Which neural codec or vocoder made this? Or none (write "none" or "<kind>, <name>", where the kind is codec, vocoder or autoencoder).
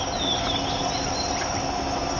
none